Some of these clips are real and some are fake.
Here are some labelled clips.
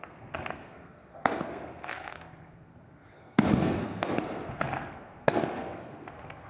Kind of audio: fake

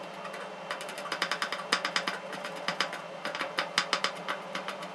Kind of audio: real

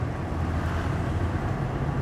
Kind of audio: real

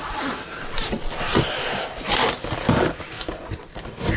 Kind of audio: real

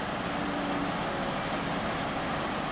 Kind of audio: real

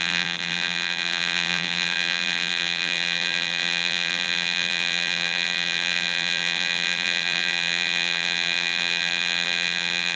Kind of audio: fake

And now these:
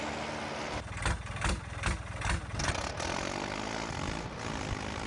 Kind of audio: real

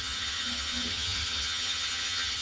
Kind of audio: fake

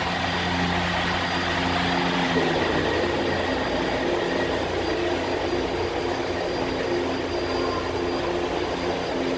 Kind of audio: real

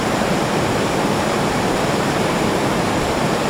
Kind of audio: fake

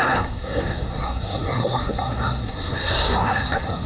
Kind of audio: fake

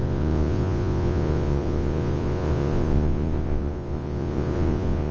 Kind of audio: fake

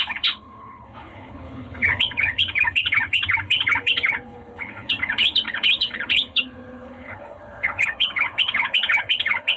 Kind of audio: fake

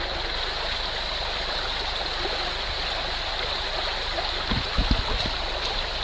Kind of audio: real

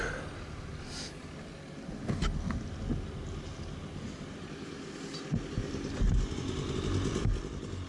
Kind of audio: real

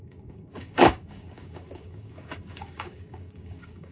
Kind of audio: fake